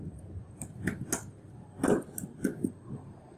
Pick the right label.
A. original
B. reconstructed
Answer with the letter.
A